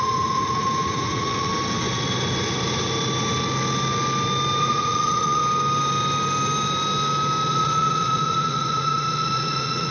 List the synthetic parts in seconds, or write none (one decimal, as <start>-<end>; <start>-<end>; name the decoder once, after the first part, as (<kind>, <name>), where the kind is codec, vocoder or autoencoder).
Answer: 0.0-1.5 (vocoder, Vocos); 4.6-5.4; 7.5-9.9